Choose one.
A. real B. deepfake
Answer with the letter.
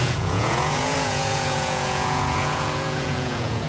B